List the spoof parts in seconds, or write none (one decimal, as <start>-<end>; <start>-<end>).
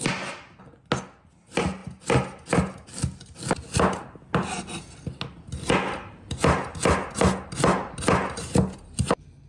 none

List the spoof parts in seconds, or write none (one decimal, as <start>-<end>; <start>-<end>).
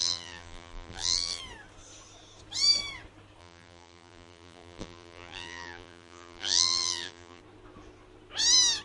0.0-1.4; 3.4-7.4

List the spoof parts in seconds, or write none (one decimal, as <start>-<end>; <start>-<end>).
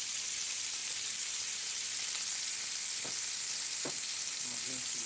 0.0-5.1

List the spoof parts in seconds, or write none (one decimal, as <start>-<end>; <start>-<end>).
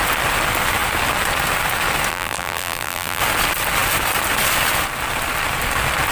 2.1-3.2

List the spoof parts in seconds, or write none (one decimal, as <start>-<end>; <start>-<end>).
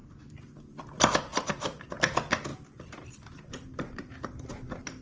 0.0-0.5; 1.3-1.9; 2.5-4.5